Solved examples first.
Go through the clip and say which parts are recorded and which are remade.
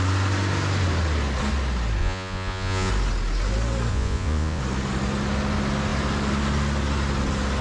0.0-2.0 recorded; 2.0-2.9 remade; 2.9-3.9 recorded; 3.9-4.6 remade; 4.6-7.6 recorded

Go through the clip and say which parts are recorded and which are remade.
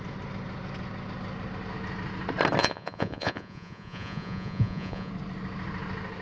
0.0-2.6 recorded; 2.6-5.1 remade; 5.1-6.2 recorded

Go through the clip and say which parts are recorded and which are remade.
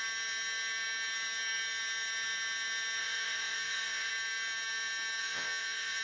0.0-3.0 recorded; 3.0-4.1 remade; 4.1-5.2 recorded; 5.2-6.0 remade